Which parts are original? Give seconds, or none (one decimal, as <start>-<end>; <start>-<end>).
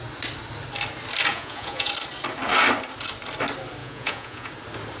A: 0.0-1.3; 1.9-3.8; 4.5-5.0